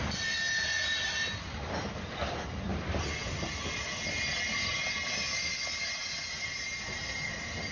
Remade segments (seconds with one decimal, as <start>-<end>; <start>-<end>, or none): none

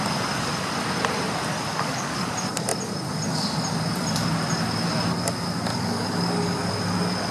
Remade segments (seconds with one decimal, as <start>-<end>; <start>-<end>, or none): 1.7-2.3; 5.7-6.7

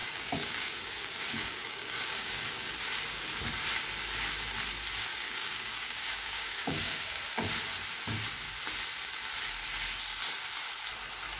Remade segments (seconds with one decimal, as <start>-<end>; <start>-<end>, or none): 0.0-2.7; 5.1-7.2

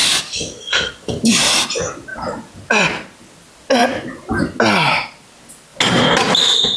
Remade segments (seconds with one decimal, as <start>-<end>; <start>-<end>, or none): 0.0-1.3

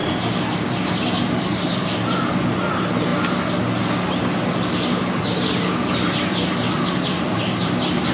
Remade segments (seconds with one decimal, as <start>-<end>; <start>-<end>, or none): none

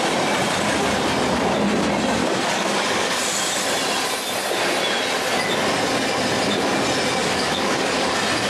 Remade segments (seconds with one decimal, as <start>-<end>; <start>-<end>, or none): 2.2-3.2; 7.2-8.1

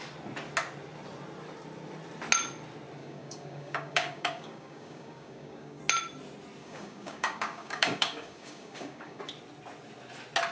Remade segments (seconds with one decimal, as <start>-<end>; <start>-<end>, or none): 3.0-5.8; 6.6-9.2